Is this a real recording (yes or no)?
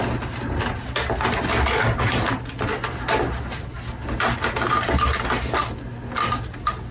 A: yes